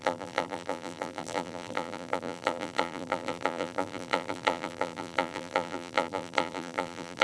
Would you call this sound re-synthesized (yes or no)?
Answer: yes